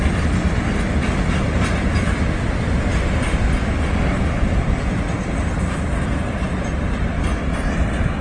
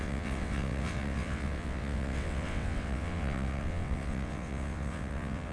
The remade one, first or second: second